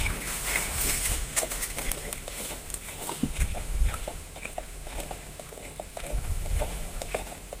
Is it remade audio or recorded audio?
remade